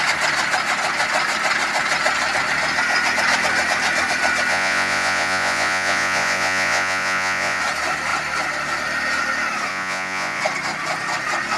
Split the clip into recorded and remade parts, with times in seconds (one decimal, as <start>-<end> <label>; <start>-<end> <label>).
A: 0.0-4.5 recorded; 4.5-7.6 remade; 7.6-9.7 recorded; 9.7-10.4 remade; 10.4-11.6 recorded